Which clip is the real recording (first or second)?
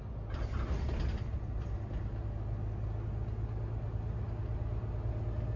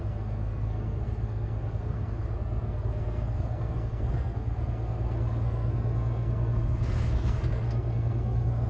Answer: first